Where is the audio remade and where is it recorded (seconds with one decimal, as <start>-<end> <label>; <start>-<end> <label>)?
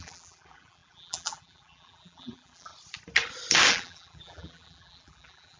0.0-2.7 remade; 2.7-3.7 recorded; 3.7-5.6 remade